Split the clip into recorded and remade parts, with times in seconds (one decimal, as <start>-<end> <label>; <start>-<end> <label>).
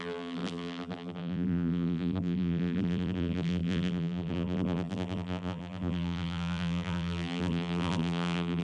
0.0-8.6 remade